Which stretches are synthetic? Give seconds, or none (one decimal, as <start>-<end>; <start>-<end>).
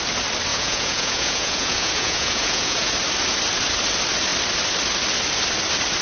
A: 0.5-2.9